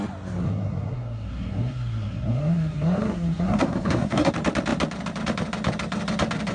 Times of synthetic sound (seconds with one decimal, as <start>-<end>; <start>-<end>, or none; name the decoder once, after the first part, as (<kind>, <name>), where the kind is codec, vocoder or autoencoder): 0.4-4.3 (codec, SNAC)